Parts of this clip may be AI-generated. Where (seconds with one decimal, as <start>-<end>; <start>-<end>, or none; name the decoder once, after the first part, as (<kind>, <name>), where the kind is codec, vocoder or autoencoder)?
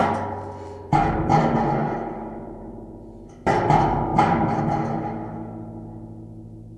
0.0-3.0 (vocoder, BigVGAN v2); 4.1-4.6